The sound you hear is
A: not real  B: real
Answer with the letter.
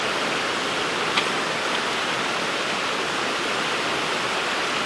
B